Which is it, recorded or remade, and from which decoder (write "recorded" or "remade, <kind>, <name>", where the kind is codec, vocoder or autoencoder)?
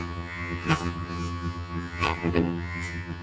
remade, vocoder, HiFi-GAN